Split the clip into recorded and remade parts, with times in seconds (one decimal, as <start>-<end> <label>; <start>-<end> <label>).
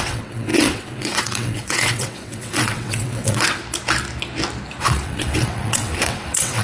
0.0-3.6 remade; 3.6-4.8 recorded; 4.8-6.6 remade